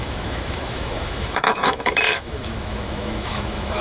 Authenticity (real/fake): fake